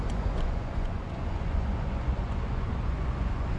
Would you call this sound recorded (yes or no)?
no